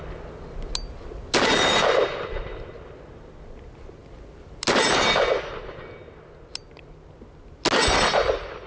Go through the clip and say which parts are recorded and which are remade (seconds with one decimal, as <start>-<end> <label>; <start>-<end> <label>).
0.0-8.7 recorded

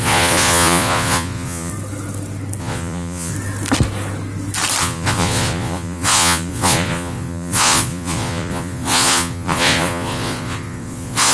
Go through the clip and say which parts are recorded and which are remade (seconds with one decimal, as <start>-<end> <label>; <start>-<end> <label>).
0.0-1.7 remade; 1.7-2.6 recorded; 2.6-3.3 remade; 3.3-4.8 recorded; 4.8-11.3 remade

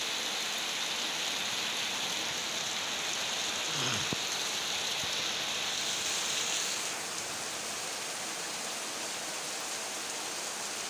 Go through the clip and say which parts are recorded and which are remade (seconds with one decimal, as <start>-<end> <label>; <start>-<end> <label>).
0.0-10.9 recorded

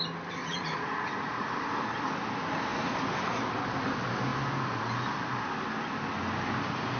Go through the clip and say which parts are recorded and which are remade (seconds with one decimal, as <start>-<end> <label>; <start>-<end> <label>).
0.0-0.4 recorded; 0.4-1.5 remade; 1.5-7.0 recorded

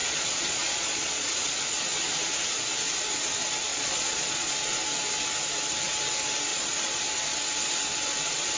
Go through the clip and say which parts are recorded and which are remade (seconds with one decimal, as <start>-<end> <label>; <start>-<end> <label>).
0.0-1.4 remade; 1.4-3.7 recorded; 3.7-4.5 remade; 4.5-6.5 recorded; 6.5-7.0 remade; 7.0-8.6 recorded

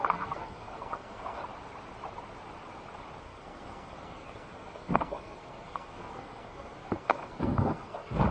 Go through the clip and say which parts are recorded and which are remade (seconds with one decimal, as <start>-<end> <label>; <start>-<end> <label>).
0.0-1.4 remade; 1.4-3.2 recorded; 3.2-8.3 remade

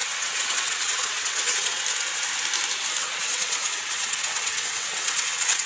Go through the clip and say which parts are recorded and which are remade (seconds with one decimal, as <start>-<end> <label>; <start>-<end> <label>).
0.0-1.8 remade; 1.8-3.0 recorded; 3.0-5.7 remade

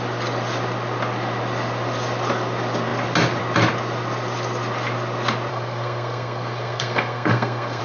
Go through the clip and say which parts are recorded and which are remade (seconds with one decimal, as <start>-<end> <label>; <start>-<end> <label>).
0.0-5.5 recorded; 5.5-7.8 remade